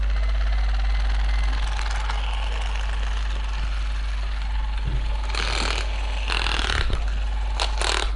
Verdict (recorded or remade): recorded